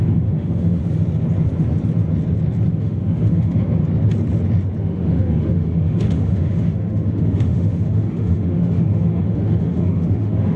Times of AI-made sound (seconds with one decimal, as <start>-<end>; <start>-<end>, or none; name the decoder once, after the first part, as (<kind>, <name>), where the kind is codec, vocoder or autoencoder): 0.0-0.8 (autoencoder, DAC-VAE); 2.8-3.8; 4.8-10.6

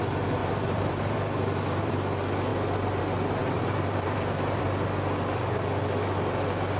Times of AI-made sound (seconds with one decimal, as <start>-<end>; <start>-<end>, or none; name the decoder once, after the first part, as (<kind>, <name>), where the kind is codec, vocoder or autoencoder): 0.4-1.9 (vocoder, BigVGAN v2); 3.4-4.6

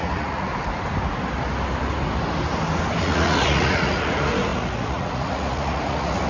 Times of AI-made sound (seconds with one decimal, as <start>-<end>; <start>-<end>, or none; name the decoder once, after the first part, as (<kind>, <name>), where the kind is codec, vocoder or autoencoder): 0.0-0.5 (vocoder, Vocos); 3.0-6.3

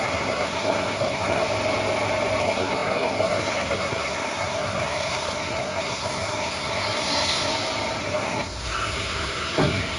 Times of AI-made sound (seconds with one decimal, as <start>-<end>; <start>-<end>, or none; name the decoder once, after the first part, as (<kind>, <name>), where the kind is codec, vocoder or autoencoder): 0.0-1.4 (codec, SNAC); 2.4-7.5; 8.0-10.0

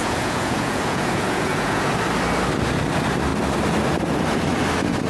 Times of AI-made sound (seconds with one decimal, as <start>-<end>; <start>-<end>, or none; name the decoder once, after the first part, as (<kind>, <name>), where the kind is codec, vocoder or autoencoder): 0.0-1.9 (vocoder, Vocos)